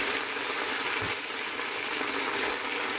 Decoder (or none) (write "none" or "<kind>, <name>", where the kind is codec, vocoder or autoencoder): none